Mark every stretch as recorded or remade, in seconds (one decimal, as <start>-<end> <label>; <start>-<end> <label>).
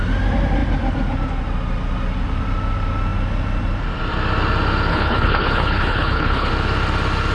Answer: 0.0-4.9 recorded; 4.9-6.5 remade; 6.5-7.3 recorded